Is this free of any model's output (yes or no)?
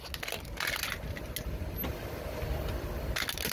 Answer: yes